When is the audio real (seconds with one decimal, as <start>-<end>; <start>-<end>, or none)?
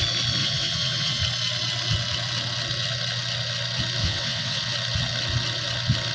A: 0.0-0.4; 1.2-4.0; 4.6-6.1